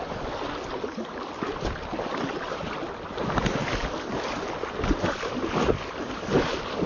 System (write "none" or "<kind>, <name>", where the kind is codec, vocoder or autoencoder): none